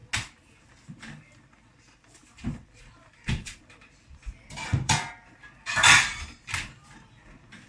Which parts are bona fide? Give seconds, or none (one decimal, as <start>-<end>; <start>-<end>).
0.0-1.4